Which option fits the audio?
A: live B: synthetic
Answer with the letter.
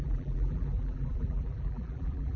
B